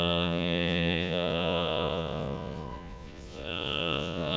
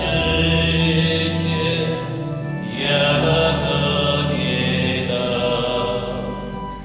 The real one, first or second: second